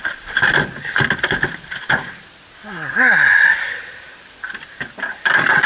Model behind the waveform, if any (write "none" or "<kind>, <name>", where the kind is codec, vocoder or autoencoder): none